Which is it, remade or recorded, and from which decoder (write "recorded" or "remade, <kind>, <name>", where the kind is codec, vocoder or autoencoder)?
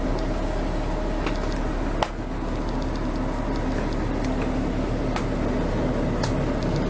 recorded